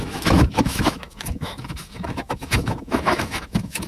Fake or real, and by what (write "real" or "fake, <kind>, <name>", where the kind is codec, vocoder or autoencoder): fake, autoencoder, DAC-VAE